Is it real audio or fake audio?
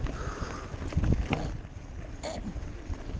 real